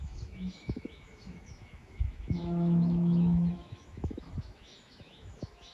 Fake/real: fake